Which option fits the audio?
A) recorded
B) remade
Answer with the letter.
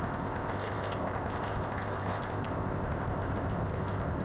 B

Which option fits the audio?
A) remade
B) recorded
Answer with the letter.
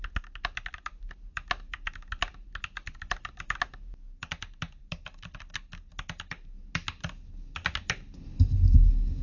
B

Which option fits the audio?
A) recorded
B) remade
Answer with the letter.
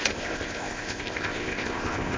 B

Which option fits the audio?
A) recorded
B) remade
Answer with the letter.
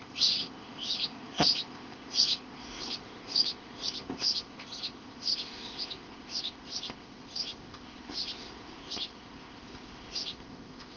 B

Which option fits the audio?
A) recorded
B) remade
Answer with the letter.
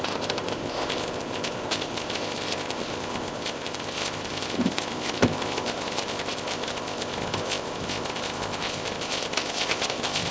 B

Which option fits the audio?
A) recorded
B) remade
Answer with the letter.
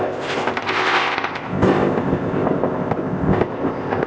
B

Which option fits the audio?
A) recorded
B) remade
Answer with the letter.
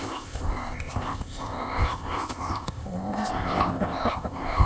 B